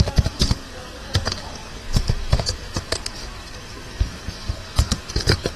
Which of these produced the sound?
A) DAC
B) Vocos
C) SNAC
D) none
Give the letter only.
A